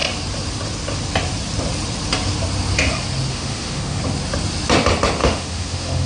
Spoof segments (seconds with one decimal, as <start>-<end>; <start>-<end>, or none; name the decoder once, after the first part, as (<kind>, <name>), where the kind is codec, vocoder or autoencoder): 3.3-4.0 (autoencoder, DAC-VAE); 5.2-6.1